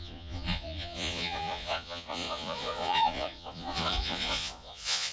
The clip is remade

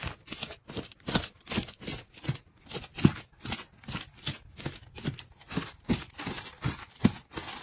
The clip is recorded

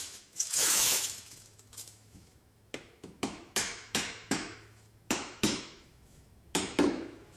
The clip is remade